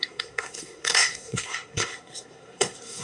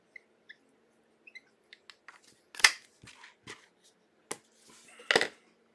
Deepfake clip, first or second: first